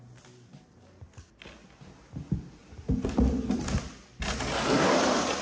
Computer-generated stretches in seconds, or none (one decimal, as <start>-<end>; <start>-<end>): none